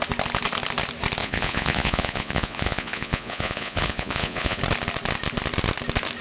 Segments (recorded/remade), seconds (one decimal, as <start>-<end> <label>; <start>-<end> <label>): 0.0-1.2 recorded; 1.2-4.6 remade; 4.6-6.2 recorded